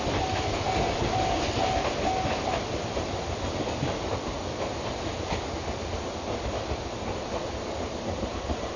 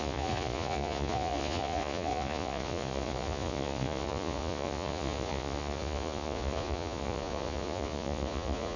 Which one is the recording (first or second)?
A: first